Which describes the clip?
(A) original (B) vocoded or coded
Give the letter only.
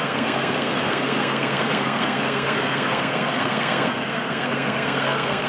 B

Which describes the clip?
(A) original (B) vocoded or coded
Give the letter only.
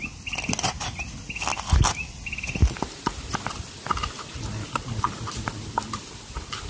A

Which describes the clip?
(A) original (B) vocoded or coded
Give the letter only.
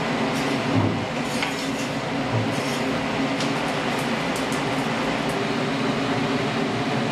A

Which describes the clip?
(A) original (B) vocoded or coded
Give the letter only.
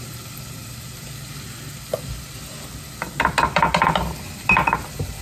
A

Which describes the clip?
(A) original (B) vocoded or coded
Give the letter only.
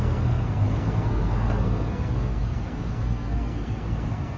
B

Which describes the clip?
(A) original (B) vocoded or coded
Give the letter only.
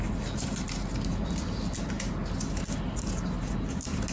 A